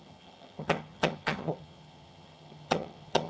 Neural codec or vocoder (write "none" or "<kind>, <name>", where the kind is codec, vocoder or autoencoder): vocoder, HiFi-GAN